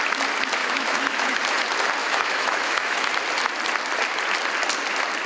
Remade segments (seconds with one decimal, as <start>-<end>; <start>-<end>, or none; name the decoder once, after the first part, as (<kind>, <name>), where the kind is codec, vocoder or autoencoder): 0.6-1.4 (autoencoder, DAC-VAE); 2.0-3.1